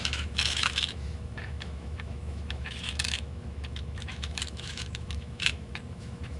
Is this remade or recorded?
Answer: remade